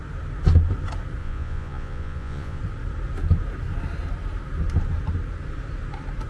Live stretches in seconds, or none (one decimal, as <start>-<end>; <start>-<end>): 0.0-1.2; 2.6-6.3